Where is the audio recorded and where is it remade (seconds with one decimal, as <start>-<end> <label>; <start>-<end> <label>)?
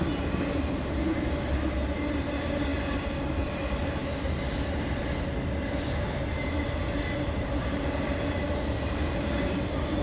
0.0-10.0 recorded